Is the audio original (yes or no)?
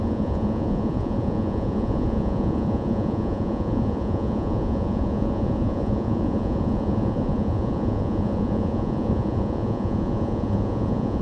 no